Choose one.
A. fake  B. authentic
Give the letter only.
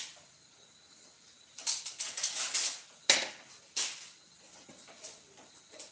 B